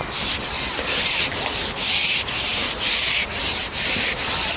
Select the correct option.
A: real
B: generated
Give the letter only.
A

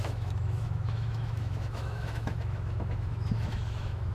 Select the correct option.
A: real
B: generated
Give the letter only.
B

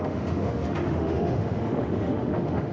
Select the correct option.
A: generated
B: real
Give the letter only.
A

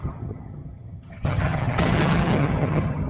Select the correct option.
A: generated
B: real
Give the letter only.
A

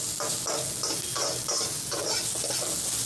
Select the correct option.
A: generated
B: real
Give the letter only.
B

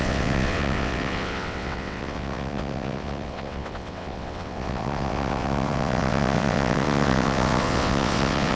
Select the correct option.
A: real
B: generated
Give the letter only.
B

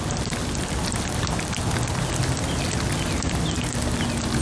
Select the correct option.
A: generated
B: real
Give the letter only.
B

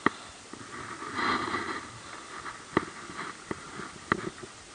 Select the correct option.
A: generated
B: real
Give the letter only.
B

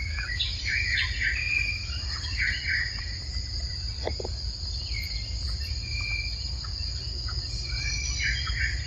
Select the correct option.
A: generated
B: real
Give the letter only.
B